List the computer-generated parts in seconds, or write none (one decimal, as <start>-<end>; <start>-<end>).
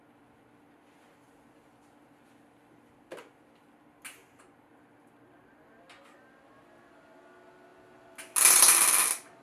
none